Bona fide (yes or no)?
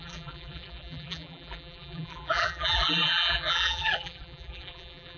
no